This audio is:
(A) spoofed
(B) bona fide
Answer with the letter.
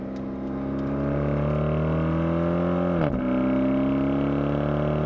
B